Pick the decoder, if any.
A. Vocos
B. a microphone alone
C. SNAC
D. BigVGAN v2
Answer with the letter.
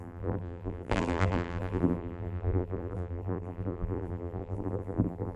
D